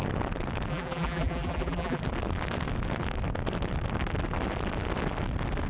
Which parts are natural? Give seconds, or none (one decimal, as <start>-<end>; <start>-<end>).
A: 0.0-0.7; 2.0-5.7